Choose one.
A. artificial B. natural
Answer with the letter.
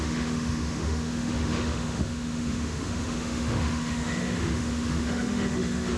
A